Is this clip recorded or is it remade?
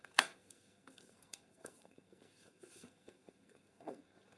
remade